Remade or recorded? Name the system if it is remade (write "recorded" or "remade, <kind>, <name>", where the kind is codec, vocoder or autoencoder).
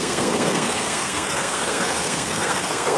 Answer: remade, codec, SNAC